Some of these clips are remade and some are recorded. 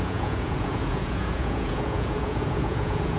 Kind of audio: remade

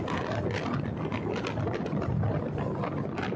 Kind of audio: recorded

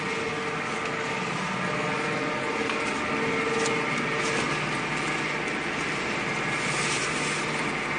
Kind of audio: recorded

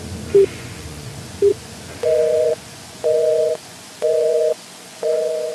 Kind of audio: remade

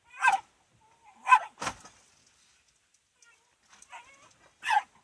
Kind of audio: recorded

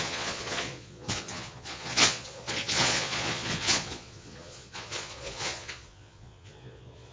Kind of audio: remade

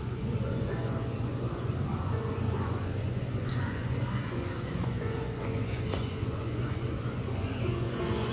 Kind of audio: remade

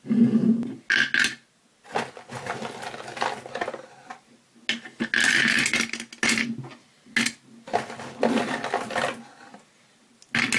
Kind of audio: recorded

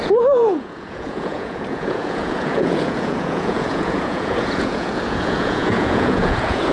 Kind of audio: remade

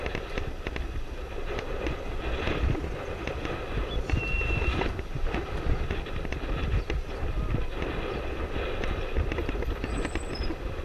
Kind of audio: recorded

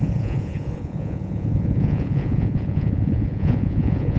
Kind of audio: remade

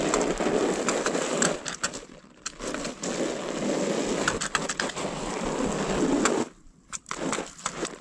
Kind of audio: recorded